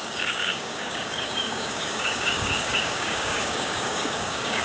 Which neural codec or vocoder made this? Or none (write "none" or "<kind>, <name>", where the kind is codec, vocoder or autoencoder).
codec, DAC